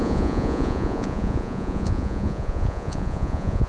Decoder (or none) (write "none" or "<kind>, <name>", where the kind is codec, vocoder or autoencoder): vocoder, Vocos